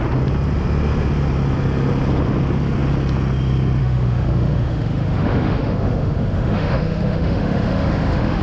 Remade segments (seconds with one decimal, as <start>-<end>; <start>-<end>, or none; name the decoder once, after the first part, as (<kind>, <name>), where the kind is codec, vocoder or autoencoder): 3.8-8.4 (autoencoder, DAC-VAE)